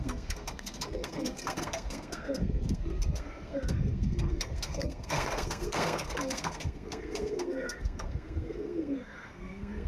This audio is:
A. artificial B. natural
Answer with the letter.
A